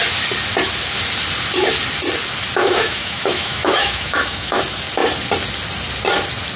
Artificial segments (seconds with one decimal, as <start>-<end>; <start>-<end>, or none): 2.6-4.6